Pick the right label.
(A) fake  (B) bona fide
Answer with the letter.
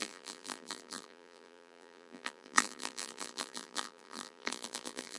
A